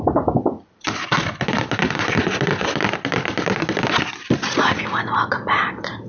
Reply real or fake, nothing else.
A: real